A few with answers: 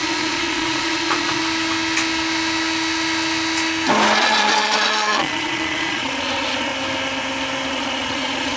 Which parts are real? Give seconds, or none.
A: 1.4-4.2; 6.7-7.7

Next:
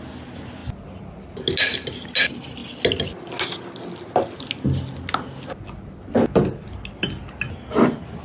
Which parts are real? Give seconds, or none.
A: 0.0-8.2

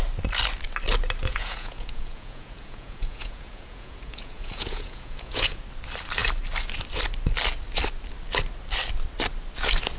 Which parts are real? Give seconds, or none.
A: 0.0-1.2; 5.6-10.0

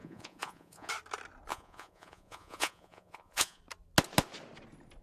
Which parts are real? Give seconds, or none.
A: 0.9-1.5; 3.6-5.0

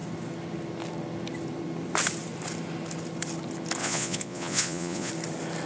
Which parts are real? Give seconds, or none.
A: 0.0-3.8; 5.1-5.7

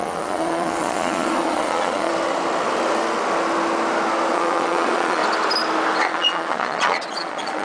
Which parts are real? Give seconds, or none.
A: 2.1-4.3; 5.2-6.0